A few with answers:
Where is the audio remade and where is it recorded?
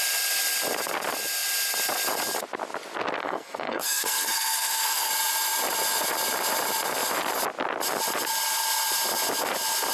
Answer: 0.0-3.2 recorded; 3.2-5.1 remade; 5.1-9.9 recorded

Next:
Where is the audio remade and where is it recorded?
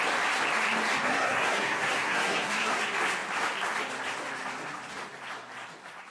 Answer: 0.0-1.1 recorded; 1.1-2.8 remade; 2.8-6.1 recorded